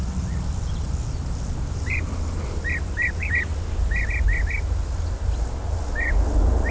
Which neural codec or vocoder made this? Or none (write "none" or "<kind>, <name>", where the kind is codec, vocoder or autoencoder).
none